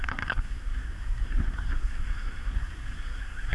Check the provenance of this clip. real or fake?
fake